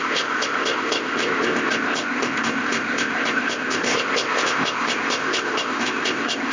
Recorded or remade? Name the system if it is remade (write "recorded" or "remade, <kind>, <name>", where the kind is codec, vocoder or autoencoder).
remade, codec, ZipCodec